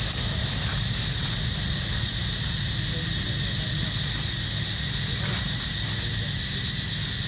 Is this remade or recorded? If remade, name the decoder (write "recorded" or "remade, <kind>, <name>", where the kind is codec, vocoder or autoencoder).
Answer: recorded